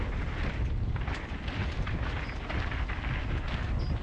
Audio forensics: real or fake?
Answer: real